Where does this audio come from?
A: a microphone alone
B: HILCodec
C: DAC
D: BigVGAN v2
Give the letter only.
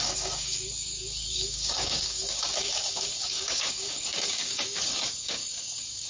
C